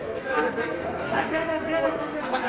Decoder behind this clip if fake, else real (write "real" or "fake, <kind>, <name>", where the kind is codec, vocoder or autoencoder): fake, codec, SNAC